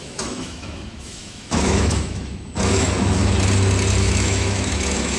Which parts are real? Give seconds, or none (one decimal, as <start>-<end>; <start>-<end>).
3.2-4.0